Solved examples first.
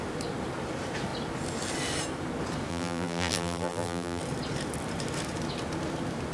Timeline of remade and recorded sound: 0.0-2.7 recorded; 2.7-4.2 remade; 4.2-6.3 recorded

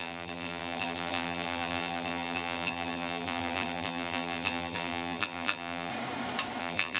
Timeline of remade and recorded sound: 0.0-5.9 remade; 5.9-6.6 recorded; 6.6-7.0 remade